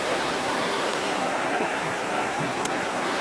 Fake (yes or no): yes